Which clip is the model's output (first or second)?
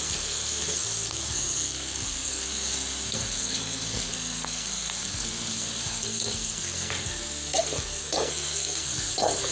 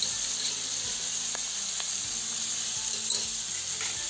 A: first